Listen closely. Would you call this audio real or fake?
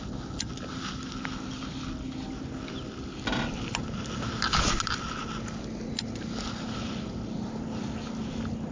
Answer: real